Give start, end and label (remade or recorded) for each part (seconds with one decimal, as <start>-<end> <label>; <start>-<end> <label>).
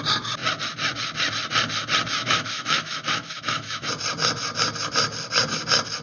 0.0-2.2 recorded; 2.2-3.9 remade; 3.9-6.0 recorded